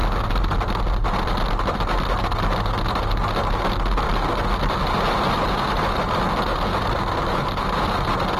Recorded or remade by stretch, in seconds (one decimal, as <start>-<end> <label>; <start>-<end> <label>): 0.0-8.4 recorded